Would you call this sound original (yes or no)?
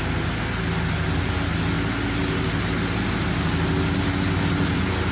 yes